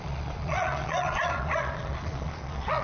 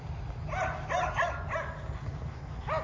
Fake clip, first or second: first